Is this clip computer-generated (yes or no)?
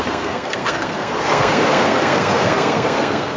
yes